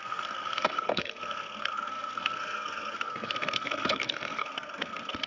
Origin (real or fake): fake